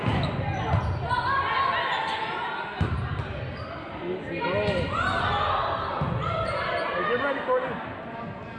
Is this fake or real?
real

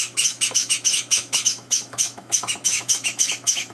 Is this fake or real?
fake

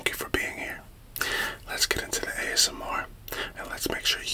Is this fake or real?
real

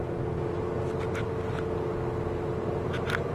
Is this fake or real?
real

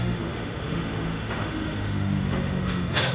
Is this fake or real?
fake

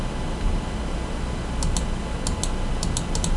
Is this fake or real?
real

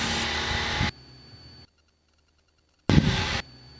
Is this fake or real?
real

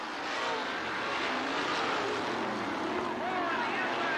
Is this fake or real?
real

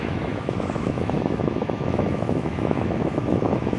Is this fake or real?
fake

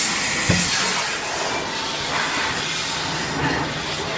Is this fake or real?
real